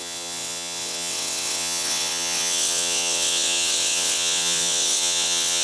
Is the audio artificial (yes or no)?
yes